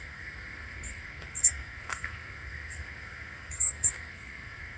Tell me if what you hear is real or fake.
fake